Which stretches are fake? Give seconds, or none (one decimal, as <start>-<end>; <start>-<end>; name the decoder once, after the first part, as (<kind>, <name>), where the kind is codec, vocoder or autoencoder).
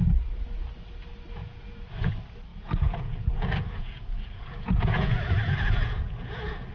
1.4-2.1 (vocoder, Vocos); 2.5-6.7